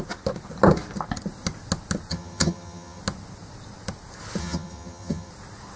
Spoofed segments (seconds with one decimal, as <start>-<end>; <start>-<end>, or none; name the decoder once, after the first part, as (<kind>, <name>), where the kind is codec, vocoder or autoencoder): 2.1-3.0 (vocoder, HiFi-GAN); 4.4-5.3